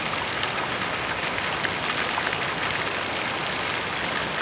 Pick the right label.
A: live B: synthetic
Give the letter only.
A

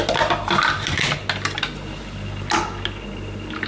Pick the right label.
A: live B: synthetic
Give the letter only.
A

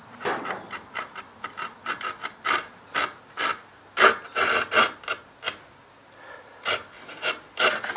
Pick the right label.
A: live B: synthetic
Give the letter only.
A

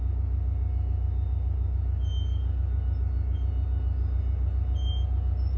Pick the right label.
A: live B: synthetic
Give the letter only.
A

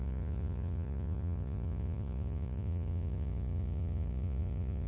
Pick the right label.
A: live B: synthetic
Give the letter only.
B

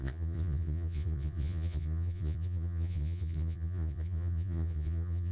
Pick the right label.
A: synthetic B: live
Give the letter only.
A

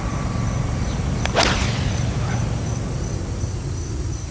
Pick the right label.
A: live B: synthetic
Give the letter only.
A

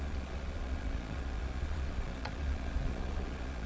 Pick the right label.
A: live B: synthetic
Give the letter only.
B